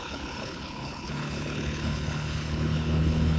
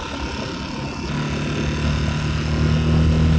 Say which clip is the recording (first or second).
second